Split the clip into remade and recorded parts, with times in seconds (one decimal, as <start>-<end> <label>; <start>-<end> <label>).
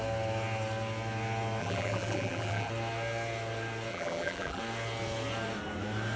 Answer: 0.0-1.6 recorded; 1.6-2.7 remade; 2.7-3.9 recorded; 3.9-4.6 remade; 4.6-6.2 recorded